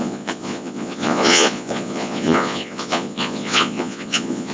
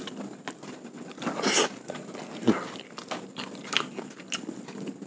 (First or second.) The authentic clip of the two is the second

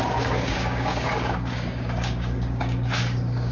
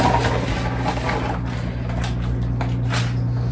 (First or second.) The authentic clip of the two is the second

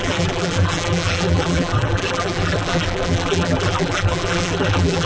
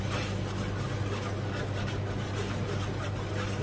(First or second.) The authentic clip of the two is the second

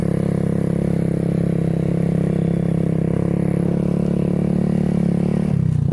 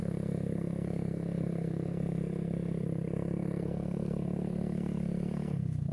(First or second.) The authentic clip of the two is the first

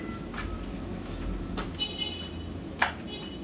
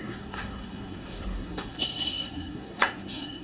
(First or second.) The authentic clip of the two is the first